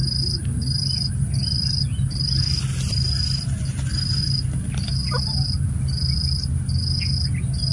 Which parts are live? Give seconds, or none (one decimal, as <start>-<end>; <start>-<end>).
0.0-7.7